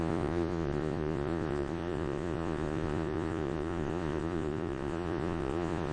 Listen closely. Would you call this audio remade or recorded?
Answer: remade